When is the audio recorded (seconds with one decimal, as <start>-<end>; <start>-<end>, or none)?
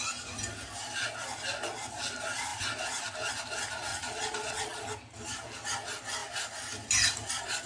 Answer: 0.0-3.9; 4.8-7.7